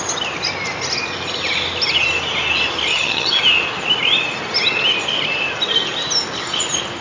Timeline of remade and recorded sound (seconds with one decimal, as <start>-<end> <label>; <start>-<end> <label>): 0.0-2.9 recorded; 2.9-3.4 remade; 3.4-7.0 recorded